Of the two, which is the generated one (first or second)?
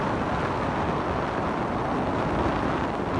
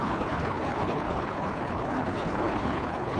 second